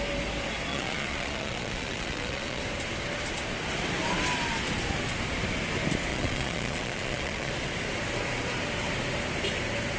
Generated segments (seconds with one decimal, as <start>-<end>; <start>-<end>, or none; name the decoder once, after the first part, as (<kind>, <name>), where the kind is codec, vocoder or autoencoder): 0.7-2.6 (vocoder, Vocos); 6.1-7.5